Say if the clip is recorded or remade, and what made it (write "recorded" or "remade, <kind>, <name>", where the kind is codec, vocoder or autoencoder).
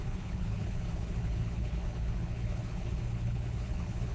remade, codec, HILCodec